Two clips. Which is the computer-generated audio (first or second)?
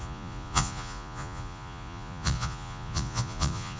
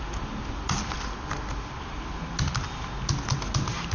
first